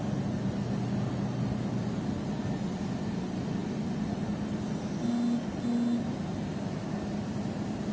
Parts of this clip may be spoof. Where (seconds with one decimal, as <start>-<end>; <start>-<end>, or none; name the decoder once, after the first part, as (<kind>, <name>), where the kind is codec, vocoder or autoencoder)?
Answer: none